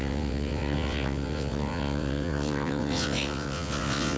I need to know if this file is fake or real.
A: fake